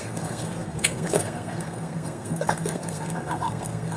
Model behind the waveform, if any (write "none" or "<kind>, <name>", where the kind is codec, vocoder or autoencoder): codec, SNAC